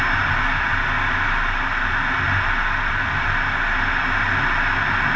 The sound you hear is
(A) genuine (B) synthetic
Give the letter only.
A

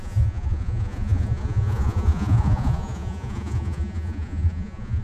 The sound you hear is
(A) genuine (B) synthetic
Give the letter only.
B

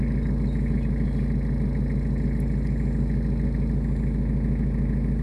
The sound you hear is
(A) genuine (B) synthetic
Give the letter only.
A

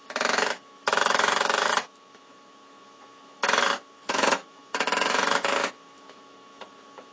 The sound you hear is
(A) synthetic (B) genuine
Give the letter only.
A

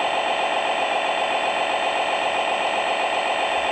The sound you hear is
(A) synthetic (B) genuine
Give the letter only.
B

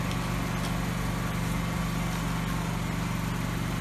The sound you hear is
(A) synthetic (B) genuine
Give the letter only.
B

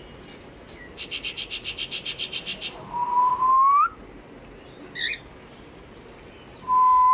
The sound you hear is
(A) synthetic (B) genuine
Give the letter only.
B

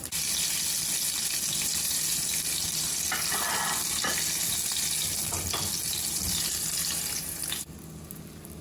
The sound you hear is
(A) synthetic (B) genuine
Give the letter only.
B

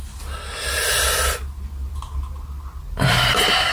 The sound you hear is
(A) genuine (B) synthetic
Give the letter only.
A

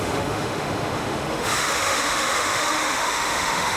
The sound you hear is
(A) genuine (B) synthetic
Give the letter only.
B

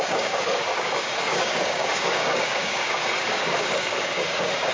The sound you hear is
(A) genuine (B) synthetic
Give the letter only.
B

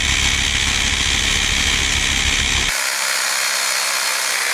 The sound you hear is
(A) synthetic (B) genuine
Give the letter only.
B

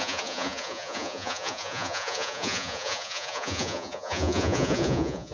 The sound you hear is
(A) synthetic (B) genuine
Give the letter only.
A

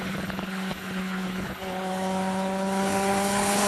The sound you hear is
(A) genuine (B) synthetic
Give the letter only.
B